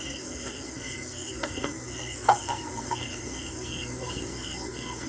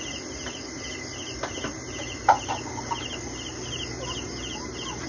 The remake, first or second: first